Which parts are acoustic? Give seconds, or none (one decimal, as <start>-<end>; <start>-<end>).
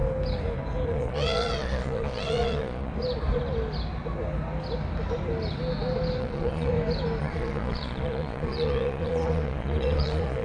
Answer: 0.0-0.9; 2.9-6.2; 6.7-7.2